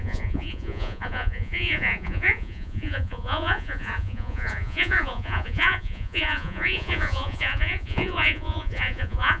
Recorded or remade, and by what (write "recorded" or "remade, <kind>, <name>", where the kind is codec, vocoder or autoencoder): remade, vocoder, Vocos